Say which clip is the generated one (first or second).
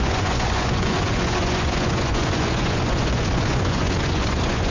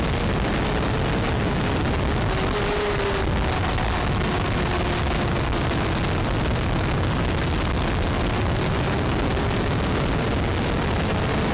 first